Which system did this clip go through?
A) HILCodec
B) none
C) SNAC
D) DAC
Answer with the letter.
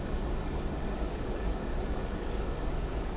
D